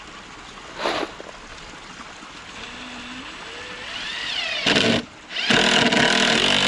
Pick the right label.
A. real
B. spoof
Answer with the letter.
A